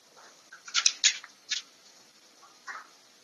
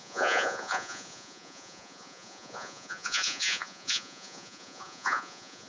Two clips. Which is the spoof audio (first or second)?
second